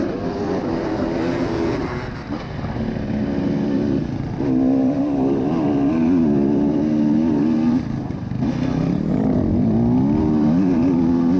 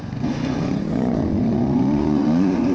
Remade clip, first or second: second